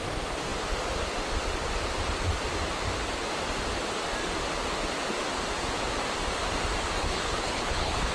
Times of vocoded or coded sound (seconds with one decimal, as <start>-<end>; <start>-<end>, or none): 7.0-8.1